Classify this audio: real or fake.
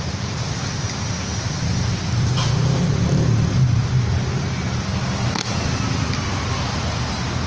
real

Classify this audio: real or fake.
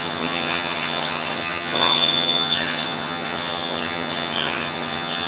fake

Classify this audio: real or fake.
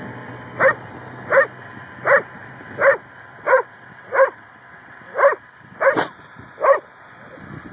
real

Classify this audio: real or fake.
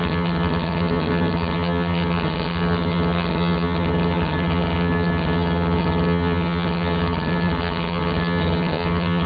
fake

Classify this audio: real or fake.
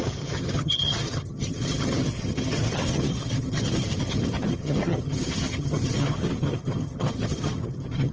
fake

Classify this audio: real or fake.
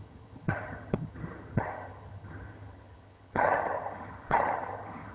fake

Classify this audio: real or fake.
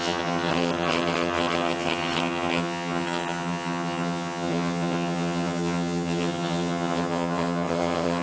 fake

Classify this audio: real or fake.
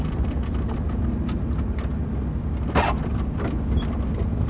real